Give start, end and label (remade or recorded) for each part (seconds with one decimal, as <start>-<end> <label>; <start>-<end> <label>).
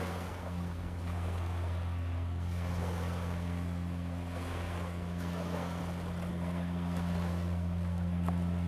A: 0.0-5.8 remade; 5.8-6.3 recorded; 6.3-8.7 remade